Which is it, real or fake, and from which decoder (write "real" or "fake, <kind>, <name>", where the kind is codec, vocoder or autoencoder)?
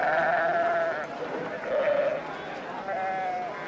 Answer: real